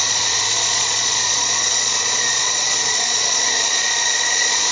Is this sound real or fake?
fake